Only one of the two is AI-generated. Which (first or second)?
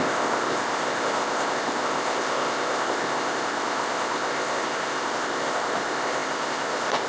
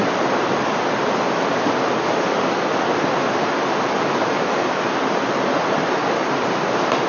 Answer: first